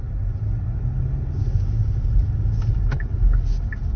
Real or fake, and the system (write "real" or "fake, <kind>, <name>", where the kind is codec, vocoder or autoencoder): real